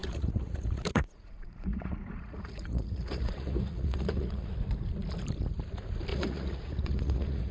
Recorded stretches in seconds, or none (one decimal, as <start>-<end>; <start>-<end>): 4.5-6.1